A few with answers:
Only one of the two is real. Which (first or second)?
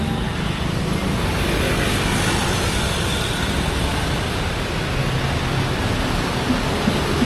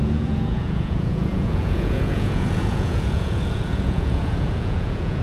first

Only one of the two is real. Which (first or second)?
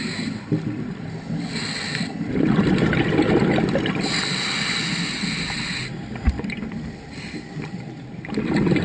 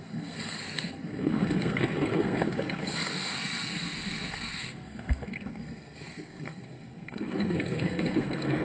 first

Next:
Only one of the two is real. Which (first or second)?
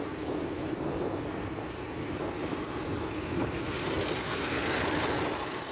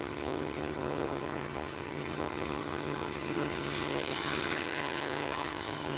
first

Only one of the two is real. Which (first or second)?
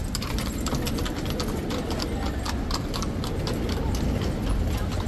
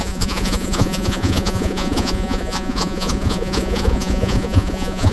first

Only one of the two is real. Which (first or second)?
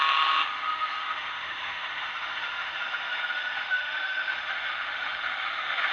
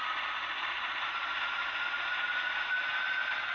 second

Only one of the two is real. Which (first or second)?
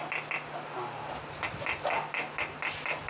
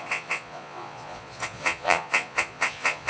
first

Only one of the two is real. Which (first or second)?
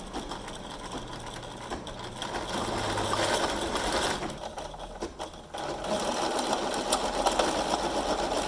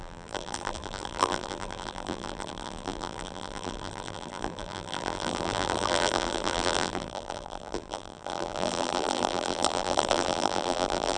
first